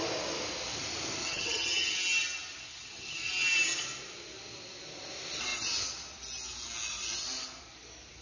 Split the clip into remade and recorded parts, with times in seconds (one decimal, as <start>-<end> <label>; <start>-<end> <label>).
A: 0.0-1.2 recorded; 1.2-1.9 remade; 1.9-2.7 recorded; 2.7-3.3 remade; 3.3-8.2 recorded